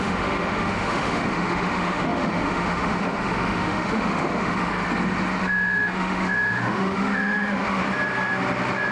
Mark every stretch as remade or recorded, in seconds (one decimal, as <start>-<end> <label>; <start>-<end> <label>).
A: 0.0-4.7 remade; 4.7-5.4 recorded; 5.4-7.8 remade; 7.8-8.9 recorded